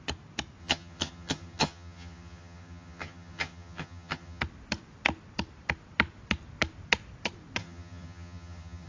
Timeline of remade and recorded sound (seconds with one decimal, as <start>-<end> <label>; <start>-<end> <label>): 0.0-0.6 recorded; 0.6-4.4 remade; 4.4-7.6 recorded; 7.6-8.9 remade